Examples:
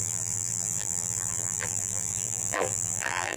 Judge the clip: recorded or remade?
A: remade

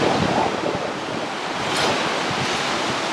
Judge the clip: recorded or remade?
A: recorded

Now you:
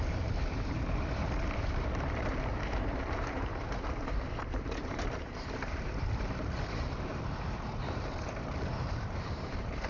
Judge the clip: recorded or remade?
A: remade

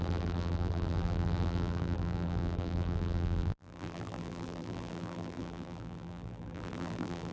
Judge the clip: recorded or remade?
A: remade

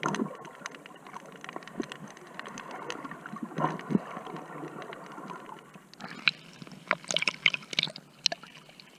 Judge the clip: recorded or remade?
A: recorded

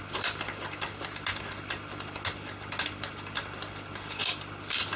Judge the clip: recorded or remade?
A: recorded